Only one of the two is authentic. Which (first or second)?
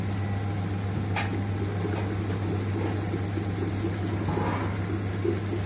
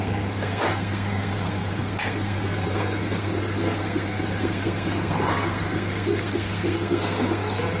first